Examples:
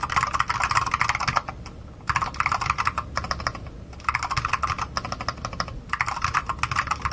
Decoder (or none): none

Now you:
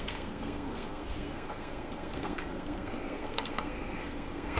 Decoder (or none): codec, SNAC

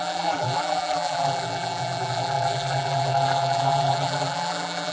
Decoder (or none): vocoder, BigVGAN v2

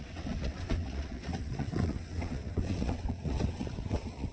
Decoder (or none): vocoder, WaveNeXt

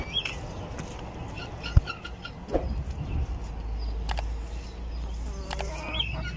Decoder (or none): none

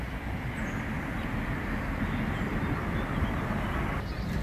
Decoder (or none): none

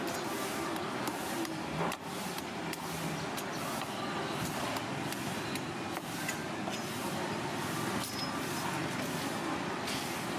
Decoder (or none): none